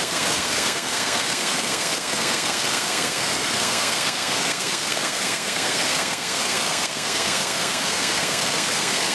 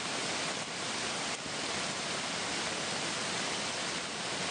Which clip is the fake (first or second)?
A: first